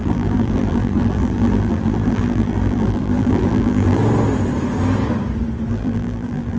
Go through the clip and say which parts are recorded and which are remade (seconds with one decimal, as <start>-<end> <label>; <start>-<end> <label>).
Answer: 0.0-4.0 remade; 4.0-5.7 recorded; 5.7-6.6 remade